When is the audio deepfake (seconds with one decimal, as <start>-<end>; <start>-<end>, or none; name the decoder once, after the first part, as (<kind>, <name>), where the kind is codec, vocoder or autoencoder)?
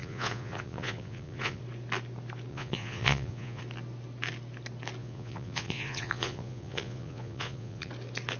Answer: 0.0-1.6 (vocoder, Vocos); 2.5-3.6; 5.0-7.9